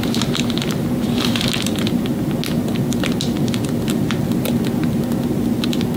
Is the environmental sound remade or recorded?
recorded